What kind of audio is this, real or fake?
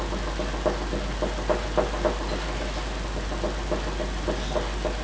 real